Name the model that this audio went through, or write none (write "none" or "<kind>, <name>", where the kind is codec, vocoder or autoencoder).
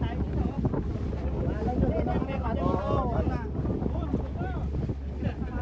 none